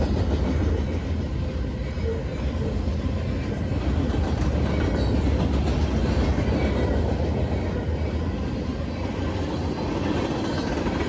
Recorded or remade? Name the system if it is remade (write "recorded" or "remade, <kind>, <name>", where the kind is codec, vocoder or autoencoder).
recorded